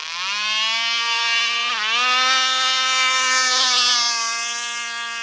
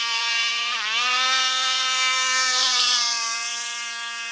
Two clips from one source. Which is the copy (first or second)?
second